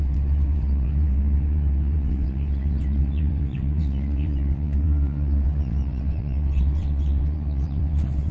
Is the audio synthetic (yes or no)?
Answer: yes